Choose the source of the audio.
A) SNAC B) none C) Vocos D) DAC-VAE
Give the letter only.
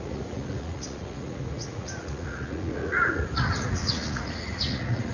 C